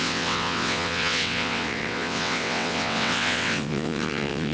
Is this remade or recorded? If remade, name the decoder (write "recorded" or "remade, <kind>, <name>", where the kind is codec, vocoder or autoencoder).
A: remade, vocoder, WaveNeXt